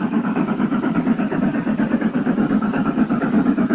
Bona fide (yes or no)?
no